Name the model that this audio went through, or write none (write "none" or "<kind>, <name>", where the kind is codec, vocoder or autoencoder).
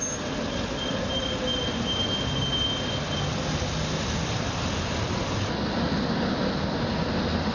none